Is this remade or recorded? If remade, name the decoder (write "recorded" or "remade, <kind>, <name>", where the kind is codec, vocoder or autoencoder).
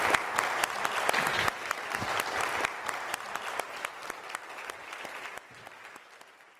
recorded